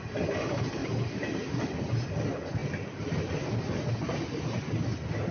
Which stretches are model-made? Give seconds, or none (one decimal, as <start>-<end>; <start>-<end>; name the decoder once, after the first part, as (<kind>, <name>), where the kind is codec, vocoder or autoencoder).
0.8-1.8 (vocoder, BigVGAN v2)